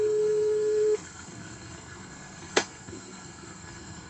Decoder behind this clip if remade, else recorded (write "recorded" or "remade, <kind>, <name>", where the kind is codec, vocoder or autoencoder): remade, codec, SNAC